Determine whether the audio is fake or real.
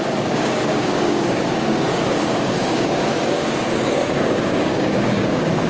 fake